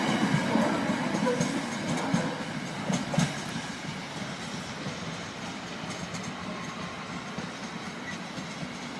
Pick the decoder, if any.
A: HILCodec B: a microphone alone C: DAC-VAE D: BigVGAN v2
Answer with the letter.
B